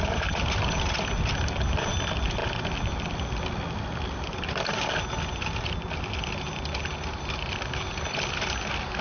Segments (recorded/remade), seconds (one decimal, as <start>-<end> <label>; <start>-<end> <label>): 0.0-9.0 recorded

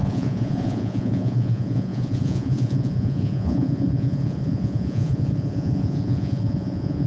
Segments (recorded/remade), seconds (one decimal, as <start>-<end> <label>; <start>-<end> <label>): 0.0-7.1 remade

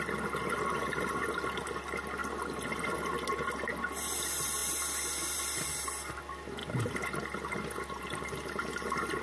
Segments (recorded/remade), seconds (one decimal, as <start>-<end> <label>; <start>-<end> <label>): 0.0-9.2 recorded

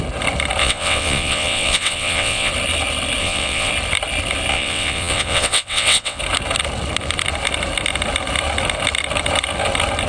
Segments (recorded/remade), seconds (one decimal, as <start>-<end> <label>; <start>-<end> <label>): 0.0-0.6 recorded; 0.6-2.5 remade; 2.5-3.2 recorded; 3.2-3.7 remade; 3.7-4.5 recorded; 4.5-6.2 remade; 6.2-10.1 recorded

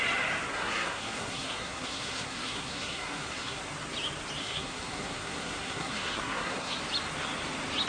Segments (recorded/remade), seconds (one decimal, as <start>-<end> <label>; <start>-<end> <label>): 0.0-0.5 recorded; 0.5-3.6 remade; 3.6-4.4 recorded; 4.4-6.8 remade; 6.8-7.9 recorded